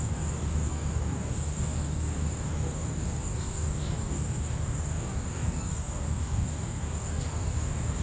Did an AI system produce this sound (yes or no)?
yes